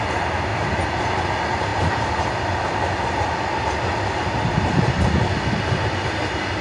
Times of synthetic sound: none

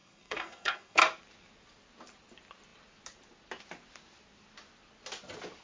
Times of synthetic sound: 0.0-1.0 (codec, SNAC)